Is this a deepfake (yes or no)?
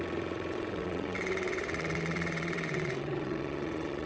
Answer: yes